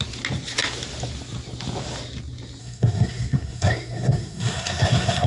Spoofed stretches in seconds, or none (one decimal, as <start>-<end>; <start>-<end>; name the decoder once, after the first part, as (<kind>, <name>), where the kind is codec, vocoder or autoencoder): 2.6-5.3 (codec, SNAC)

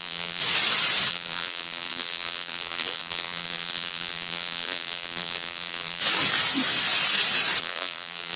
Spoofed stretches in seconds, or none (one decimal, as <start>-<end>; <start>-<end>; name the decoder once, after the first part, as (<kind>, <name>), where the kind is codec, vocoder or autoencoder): 0.0-0.4 (vocoder, BigVGAN v2); 1.1-6.0; 7.6-8.4

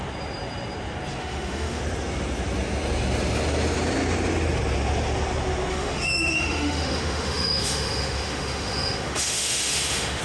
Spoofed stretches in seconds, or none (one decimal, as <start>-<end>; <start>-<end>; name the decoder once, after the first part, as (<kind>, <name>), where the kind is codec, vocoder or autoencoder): 1.2-1.8 (autoencoder, DAC-VAE); 5.7-10.2

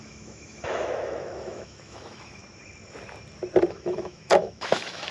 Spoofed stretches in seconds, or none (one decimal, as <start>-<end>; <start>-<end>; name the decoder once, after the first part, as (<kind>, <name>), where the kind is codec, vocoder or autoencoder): 0.0-2.4 (autoencoder, DAC-VAE); 3.7-5.1